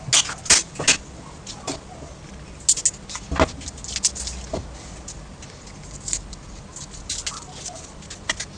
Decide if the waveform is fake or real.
real